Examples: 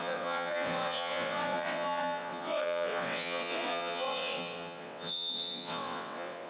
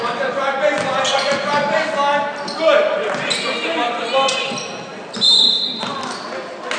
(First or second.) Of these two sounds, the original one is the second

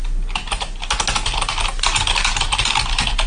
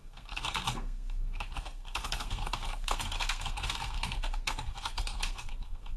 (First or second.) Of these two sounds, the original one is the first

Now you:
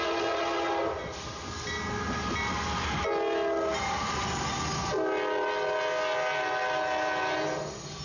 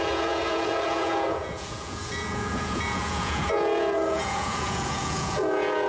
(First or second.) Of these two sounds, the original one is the first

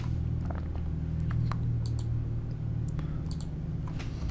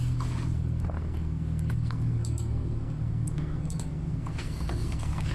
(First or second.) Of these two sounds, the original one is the first